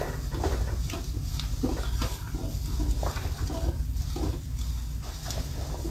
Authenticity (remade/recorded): recorded